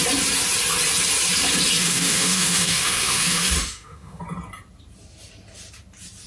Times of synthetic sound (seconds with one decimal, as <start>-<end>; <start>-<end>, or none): 1.8-4.2